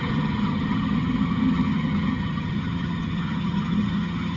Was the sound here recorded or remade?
remade